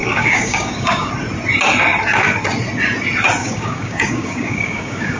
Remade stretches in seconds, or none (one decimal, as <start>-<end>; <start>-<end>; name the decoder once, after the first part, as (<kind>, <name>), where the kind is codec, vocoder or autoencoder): 0.0-1.1 (codec, DAC); 3.4-5.2